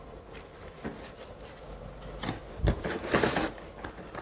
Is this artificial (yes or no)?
no